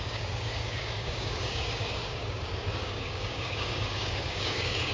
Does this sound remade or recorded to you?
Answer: remade